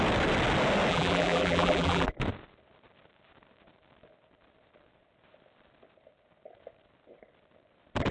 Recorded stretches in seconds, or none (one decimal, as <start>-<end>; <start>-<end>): 0.0-0.9; 2.1-8.1